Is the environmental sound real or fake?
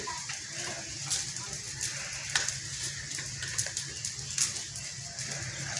real